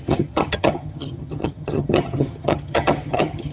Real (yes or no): no